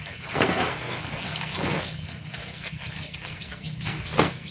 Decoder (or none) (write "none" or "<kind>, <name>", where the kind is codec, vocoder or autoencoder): codec, SNAC